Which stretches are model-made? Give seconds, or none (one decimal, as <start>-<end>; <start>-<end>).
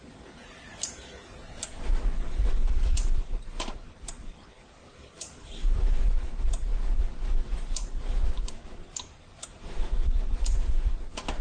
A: 0.0-6.7; 9.6-11.4